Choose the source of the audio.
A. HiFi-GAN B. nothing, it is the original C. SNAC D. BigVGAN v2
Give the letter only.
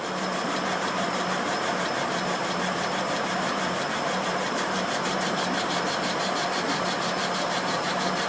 D